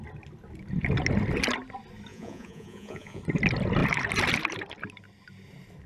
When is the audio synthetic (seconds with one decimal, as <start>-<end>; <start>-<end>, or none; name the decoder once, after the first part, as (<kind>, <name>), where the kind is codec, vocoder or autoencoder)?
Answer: 2.1-3.2 (vocoder, Vocos)